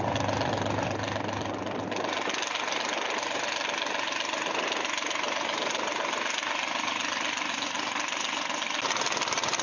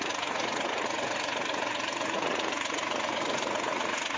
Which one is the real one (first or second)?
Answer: first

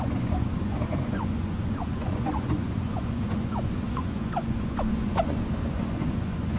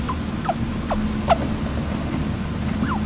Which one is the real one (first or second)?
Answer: second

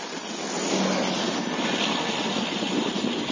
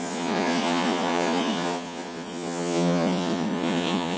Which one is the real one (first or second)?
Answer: first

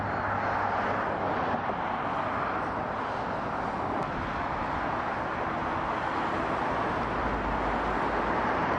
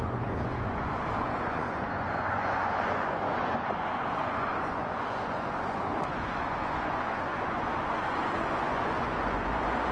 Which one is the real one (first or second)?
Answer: first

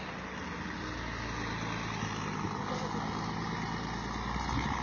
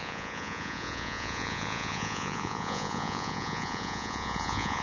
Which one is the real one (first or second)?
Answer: first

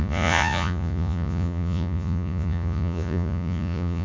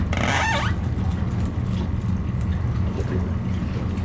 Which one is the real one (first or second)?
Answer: second